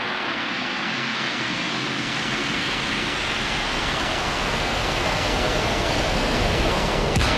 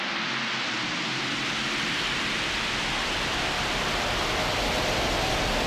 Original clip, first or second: second